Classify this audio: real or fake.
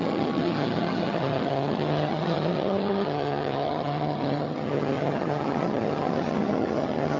fake